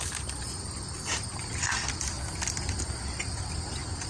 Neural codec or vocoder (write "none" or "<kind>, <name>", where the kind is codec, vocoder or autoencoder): none